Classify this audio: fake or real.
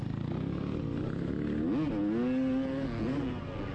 real